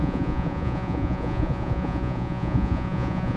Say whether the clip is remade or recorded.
remade